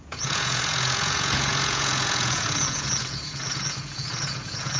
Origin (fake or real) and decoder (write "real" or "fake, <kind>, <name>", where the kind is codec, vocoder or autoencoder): fake, vocoder, Vocos